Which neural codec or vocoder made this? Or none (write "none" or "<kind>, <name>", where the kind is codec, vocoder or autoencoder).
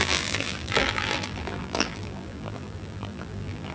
vocoder, BigVGAN v2